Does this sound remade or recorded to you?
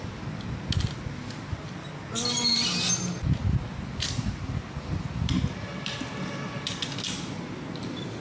recorded